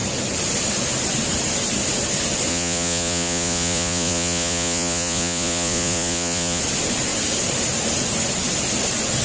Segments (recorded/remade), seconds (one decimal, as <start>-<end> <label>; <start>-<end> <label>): 0.0-2.5 recorded; 2.5-6.6 remade; 6.6-9.2 recorded